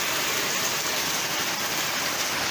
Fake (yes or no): no